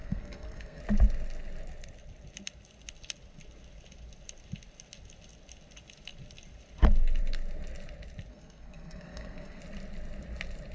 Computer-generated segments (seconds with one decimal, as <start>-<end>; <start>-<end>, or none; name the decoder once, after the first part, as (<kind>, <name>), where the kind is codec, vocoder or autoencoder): 0.0-0.8 (codec, SNAC); 8.3-9.6